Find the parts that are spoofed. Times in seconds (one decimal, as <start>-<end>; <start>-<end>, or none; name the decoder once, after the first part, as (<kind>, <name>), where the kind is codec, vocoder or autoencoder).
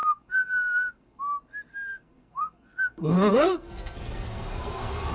0.0-1.2 (codec, SNAC); 1.7-5.1